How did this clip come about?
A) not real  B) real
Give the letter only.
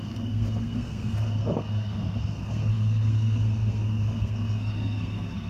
A